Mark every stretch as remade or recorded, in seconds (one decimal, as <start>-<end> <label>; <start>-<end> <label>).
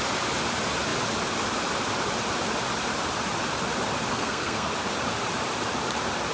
0.0-4.1 recorded; 4.1-4.7 remade; 4.7-6.3 recorded